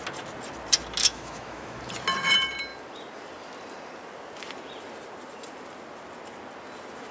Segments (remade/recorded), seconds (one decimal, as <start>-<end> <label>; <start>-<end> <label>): 0.0-1.0 recorded; 1.0-1.8 remade; 1.8-7.1 recorded